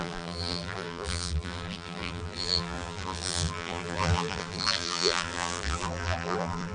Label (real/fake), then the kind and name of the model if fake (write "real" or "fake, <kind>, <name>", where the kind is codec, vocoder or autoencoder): fake, vocoder, BigVGAN v2